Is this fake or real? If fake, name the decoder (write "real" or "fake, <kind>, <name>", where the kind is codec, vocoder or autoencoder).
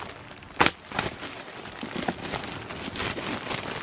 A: real